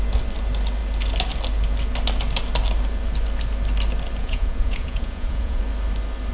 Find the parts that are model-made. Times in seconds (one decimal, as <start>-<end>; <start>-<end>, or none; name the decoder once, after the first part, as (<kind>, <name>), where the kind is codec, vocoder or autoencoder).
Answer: 4.2-5.6 (vocoder, Vocos)